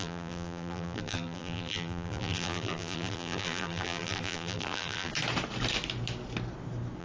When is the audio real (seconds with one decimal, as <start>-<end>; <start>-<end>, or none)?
5.1-7.0